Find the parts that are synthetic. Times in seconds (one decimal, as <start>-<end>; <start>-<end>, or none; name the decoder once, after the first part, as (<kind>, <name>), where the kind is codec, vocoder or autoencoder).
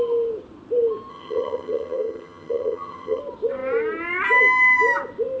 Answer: 1.1-3.2 (vocoder, HiFi-GAN)